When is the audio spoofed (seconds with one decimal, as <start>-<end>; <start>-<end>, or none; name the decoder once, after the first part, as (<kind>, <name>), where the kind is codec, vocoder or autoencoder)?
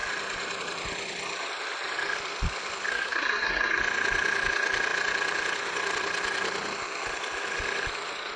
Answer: 2.9-3.8 (codec, SNAC)